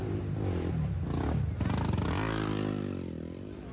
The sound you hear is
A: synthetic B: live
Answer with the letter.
B